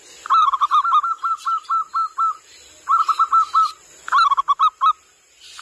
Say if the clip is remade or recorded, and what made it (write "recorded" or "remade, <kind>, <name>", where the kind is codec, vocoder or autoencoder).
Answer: recorded